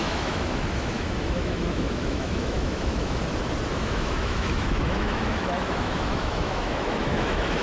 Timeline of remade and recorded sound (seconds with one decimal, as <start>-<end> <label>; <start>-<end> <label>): 0.0-3.2 remade; 3.2-3.7 recorded; 3.7-7.6 remade